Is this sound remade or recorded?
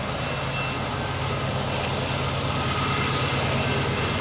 recorded